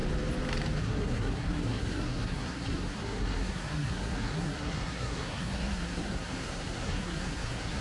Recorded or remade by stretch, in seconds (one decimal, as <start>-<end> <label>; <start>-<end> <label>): 0.0-0.8 recorded; 0.8-7.8 remade